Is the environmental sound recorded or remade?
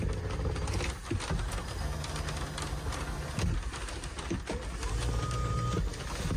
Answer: recorded